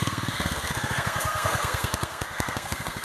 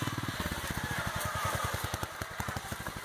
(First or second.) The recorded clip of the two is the second